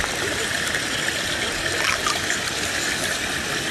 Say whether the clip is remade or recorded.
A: recorded